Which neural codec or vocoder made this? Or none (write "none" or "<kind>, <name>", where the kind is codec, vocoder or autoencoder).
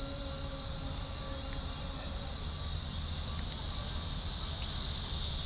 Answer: none